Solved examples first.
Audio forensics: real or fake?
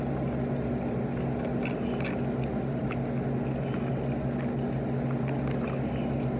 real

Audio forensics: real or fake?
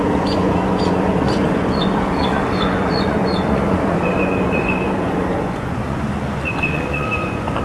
fake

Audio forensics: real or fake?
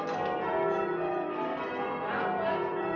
real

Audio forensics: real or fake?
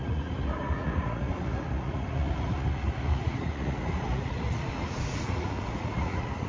fake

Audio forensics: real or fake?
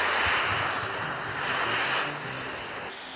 real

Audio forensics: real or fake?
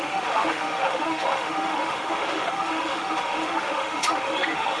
fake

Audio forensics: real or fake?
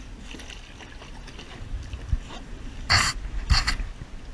real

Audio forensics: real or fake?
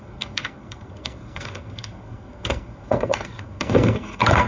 fake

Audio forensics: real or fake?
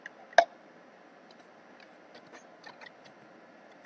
real